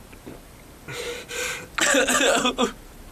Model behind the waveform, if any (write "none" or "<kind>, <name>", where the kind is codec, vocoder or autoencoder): none